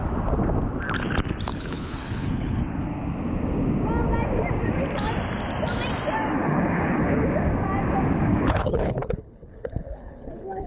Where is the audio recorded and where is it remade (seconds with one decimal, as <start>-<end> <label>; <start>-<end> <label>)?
0.0-1.5 recorded; 1.5-2.6 remade; 2.6-6.4 recorded; 6.4-7.2 remade; 7.2-8.3 recorded; 8.3-10.7 remade